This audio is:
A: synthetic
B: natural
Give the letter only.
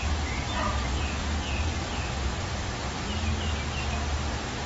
B